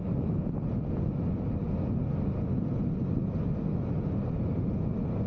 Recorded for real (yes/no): yes